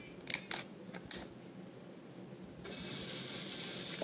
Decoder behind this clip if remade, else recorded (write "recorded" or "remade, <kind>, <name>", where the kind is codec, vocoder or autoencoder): recorded